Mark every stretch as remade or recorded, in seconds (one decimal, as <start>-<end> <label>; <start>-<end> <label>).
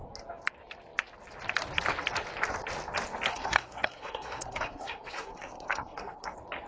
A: 0.0-3.3 recorded; 3.3-6.3 remade; 6.3-6.7 recorded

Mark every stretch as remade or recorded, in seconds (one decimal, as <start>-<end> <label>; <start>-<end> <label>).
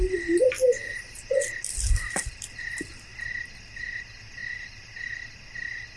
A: 0.0-6.0 recorded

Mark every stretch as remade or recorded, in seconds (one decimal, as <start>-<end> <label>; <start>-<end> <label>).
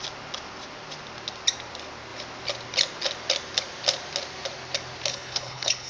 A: 0.0-5.1 recorded; 5.1-5.9 remade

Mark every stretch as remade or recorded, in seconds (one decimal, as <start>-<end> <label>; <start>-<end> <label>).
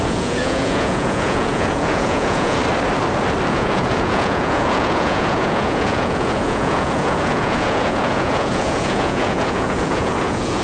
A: 0.0-2.6 remade; 2.6-3.5 recorded; 3.5-10.6 remade